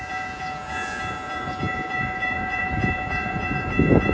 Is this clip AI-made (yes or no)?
yes